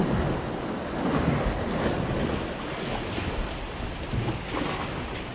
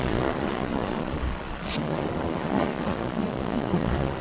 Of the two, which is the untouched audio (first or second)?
first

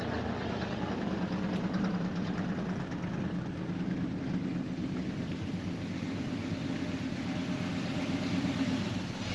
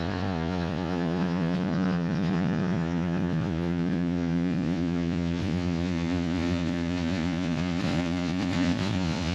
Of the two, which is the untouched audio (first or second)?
first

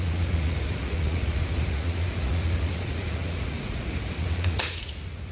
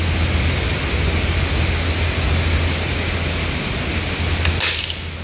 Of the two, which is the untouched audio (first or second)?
second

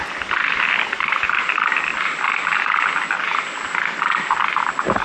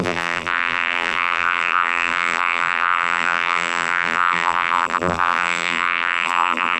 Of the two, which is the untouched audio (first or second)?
first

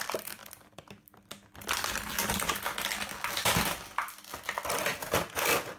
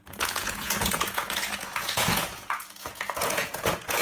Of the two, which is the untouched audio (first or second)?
first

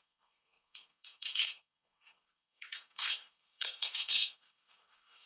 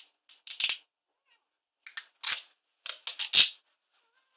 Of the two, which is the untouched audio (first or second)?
second